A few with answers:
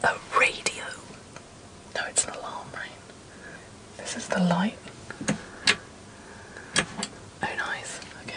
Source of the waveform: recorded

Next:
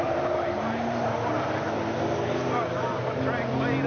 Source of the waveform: recorded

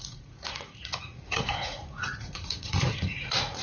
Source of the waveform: remade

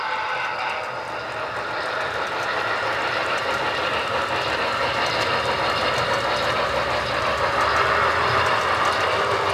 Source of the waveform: recorded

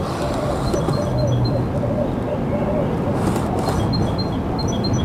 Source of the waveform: recorded